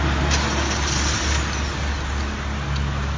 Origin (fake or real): real